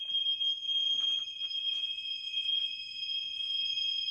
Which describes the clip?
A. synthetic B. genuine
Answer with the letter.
A